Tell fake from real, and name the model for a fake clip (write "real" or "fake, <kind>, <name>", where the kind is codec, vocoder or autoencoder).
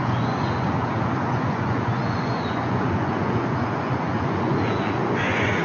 fake, vocoder, Vocos